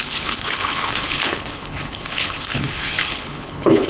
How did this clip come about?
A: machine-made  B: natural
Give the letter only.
A